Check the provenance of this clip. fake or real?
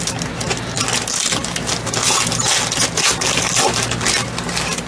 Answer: real